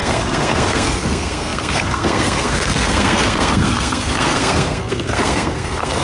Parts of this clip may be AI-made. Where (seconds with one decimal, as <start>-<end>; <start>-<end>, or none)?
0.0-6.0